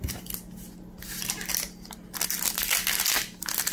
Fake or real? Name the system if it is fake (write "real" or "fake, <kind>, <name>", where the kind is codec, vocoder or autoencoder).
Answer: real